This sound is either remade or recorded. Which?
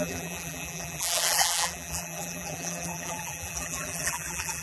remade